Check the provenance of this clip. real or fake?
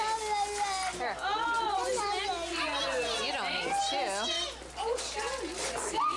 real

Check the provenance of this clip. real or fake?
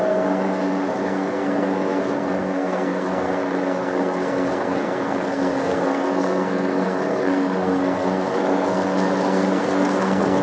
fake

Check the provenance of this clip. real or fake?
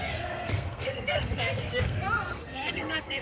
fake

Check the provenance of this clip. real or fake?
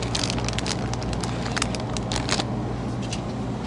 real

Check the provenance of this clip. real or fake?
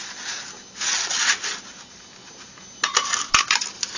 real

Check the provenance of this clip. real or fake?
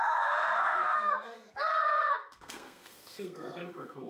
fake